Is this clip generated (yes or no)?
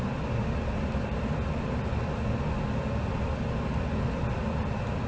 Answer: no